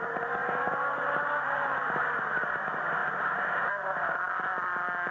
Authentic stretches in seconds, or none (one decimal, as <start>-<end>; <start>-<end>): 0.0-0.4; 2.0-3.0; 3.7-5.1